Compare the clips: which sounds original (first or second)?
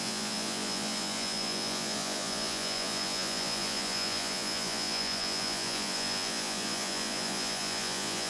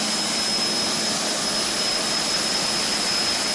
second